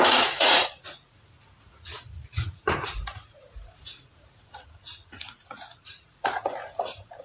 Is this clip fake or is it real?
fake